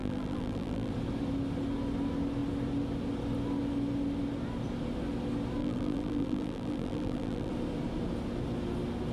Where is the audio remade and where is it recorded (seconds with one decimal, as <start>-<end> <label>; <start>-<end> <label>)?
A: 0.0-0.9 remade; 0.9-5.6 recorded; 5.6-7.5 remade; 7.5-9.1 recorded